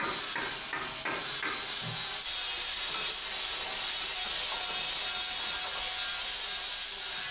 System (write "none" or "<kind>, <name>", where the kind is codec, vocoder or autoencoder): none